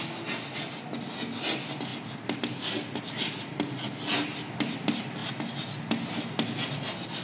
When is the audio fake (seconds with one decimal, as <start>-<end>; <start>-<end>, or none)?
none